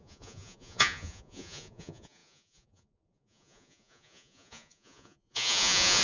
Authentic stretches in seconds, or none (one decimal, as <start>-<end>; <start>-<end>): none

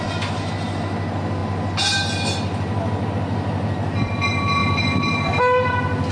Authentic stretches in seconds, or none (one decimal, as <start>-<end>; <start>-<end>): 0.0-6.1

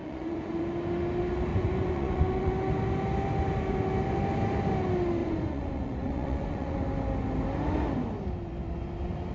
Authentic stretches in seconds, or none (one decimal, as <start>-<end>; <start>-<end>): 0.6-1.5; 2.5-5.2; 6.8-9.3

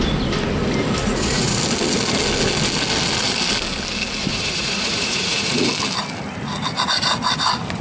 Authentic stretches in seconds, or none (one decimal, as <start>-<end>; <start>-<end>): 0.0-1.0; 1.6-4.2; 5.7-7.8

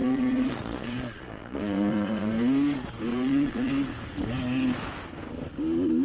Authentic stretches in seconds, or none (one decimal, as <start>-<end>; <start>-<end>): 2.3-3.1; 3.7-6.0

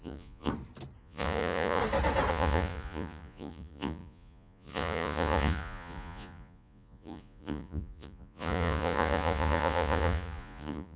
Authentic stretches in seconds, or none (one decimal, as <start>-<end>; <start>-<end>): 0.5-1.0; 1.8-2.3

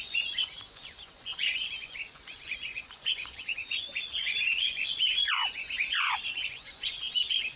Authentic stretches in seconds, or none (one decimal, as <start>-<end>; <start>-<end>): none

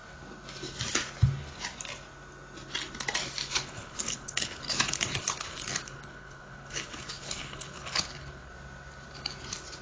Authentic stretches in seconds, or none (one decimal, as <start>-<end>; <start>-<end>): 0.0-3.4; 8.5-9.8